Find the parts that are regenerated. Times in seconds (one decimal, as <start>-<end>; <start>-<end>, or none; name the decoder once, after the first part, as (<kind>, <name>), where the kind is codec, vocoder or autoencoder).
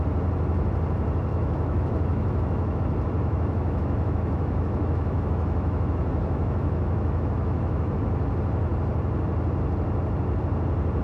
1.3-2.8 (autoencoder, DAC-VAE); 3.2-8.0